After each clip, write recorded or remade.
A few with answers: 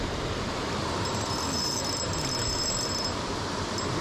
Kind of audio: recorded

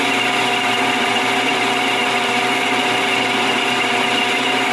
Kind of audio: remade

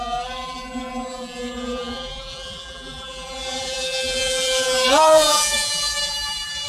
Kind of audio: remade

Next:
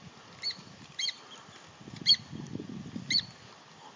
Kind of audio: recorded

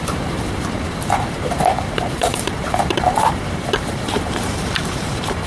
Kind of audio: remade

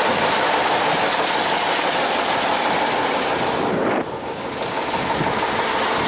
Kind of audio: recorded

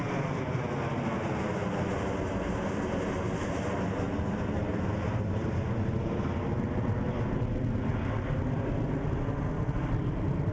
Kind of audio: recorded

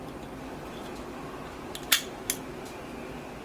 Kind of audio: recorded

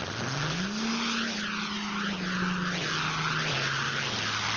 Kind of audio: recorded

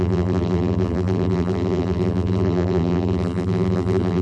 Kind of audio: remade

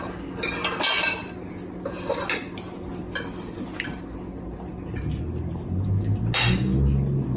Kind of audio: recorded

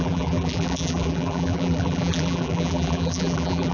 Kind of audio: remade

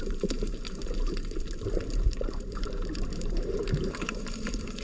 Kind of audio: remade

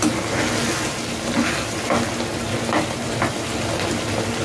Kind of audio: recorded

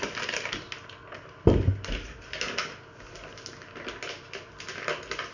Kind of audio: recorded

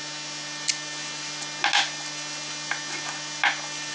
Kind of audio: recorded